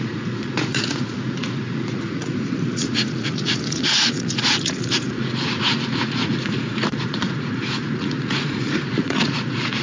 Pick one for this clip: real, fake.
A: fake